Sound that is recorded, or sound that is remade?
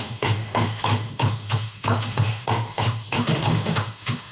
remade